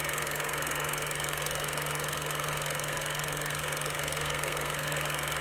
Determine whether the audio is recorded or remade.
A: remade